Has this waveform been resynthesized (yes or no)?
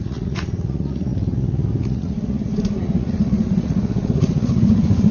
yes